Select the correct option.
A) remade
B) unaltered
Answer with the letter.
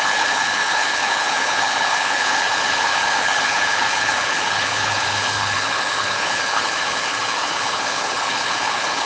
A